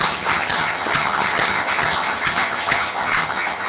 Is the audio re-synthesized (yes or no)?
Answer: yes